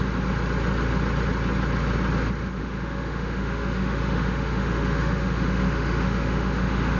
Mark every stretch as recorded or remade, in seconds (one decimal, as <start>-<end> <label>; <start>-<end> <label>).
0.0-2.6 recorded; 2.6-7.0 remade